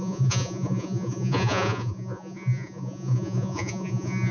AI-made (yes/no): yes